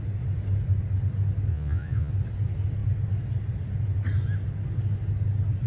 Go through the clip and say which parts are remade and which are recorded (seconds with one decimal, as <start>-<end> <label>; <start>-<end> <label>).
0.0-1.5 recorded; 1.5-2.1 remade; 2.1-5.7 recorded